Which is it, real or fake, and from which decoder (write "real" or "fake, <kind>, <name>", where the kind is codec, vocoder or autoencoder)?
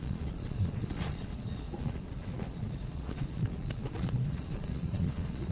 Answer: fake, vocoder, Vocos